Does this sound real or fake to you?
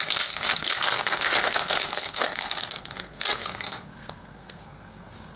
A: fake